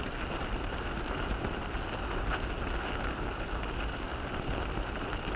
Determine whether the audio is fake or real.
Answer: real